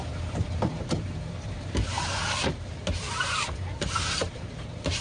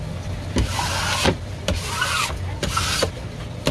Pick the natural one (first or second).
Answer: second